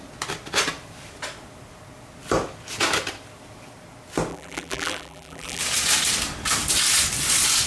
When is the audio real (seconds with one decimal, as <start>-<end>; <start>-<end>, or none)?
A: 0.0-4.3; 5.6-7.7